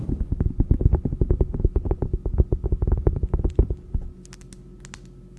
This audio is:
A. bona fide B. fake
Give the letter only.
A